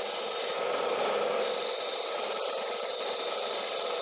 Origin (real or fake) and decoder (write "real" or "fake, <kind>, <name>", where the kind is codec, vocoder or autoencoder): fake, vocoder, BigVGAN v2